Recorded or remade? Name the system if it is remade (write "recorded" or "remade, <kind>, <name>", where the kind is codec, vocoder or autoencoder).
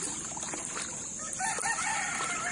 recorded